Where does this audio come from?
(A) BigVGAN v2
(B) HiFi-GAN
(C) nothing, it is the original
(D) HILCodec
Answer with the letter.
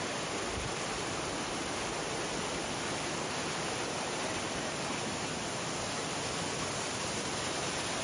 C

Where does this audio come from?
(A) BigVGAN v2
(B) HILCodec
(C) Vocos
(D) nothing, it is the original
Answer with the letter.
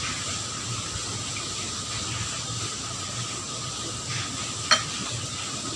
D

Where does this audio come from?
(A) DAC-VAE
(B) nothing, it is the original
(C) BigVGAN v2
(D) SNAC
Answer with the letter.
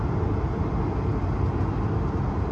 B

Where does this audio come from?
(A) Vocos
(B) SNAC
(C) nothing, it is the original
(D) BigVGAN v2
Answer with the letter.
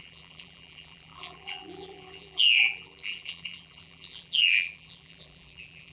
D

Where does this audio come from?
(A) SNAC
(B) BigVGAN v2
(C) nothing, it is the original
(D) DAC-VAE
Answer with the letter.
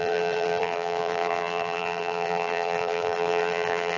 B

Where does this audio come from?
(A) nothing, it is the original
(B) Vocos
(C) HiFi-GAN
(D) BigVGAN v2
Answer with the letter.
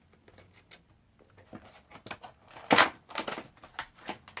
A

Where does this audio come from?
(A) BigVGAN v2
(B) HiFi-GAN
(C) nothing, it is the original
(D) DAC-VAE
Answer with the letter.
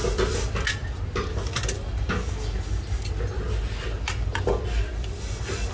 C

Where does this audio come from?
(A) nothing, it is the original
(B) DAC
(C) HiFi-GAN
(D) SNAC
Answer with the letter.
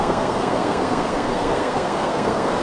D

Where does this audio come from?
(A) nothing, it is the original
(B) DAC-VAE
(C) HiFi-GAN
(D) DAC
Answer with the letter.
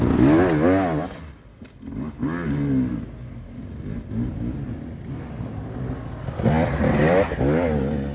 A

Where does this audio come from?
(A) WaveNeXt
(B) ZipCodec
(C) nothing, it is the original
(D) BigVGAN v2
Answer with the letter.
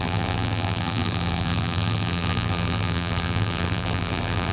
D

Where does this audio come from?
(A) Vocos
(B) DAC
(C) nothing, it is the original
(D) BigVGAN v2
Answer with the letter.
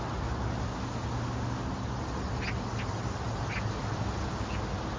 C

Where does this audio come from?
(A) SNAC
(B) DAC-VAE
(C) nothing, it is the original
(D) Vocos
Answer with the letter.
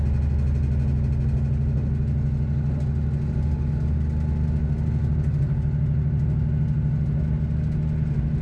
C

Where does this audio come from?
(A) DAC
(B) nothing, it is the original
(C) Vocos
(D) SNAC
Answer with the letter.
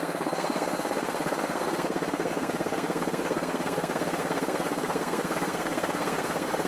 D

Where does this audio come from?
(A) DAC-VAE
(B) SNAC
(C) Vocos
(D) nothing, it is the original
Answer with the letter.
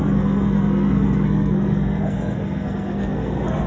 B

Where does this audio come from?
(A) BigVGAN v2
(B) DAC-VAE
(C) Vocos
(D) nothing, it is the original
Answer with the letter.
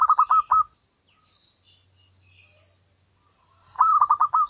D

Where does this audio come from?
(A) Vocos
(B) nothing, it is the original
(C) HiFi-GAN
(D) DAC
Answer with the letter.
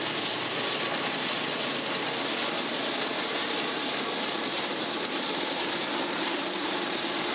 B